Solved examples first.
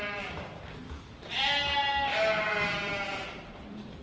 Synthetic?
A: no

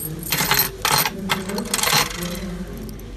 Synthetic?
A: no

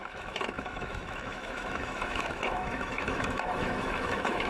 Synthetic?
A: yes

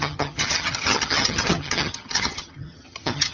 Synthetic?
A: yes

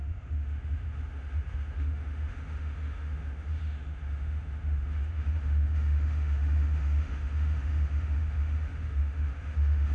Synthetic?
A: yes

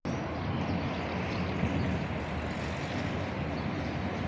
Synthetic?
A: no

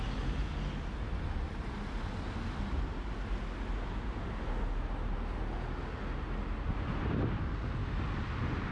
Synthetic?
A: no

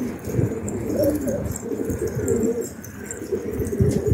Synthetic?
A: no